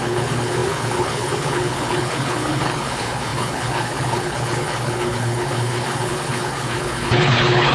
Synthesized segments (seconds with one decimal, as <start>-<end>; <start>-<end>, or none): 0.0-7.7